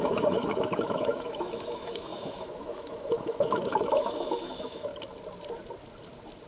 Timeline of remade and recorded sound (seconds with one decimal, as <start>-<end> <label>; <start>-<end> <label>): 0.0-4.9 remade; 4.9-6.5 recorded